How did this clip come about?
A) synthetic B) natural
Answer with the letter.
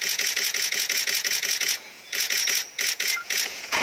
A